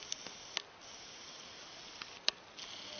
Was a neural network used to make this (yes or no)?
no